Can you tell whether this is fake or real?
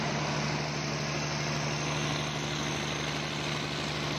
real